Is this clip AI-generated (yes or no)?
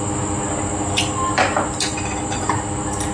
no